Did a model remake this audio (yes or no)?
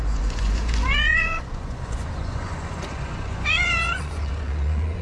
yes